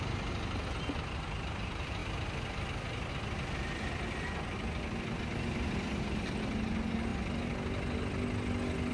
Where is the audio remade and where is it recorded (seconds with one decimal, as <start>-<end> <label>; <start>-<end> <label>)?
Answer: 0.0-8.9 recorded